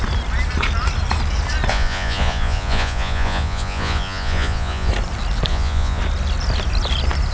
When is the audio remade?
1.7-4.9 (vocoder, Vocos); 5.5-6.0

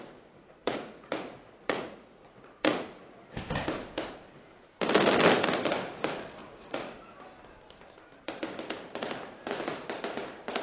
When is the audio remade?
0.6-3.2 (vocoder, Vocos); 6.4-7.1

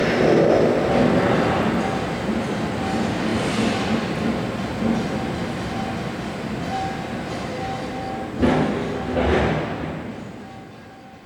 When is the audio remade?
none